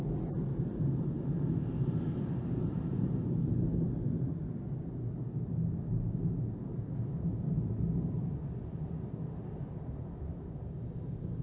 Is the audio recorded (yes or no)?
yes